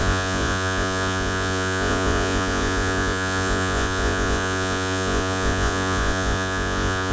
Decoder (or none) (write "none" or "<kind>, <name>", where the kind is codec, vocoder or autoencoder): vocoder, Vocos